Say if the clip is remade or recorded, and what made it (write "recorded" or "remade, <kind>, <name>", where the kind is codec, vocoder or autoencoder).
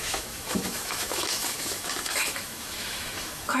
remade, autoencoder, DAC-VAE